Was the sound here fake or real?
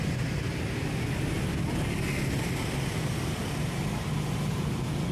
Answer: real